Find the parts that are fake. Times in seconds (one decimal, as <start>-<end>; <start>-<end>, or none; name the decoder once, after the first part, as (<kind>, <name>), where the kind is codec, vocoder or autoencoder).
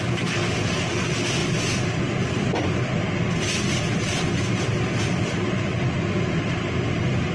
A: none